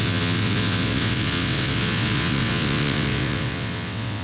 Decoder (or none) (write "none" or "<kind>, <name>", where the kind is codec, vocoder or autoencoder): vocoder, WaveNeXt